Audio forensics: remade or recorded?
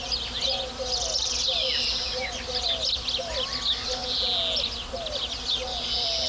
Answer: recorded